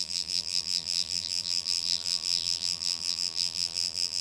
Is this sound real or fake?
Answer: fake